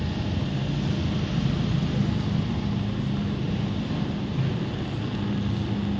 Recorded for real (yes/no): yes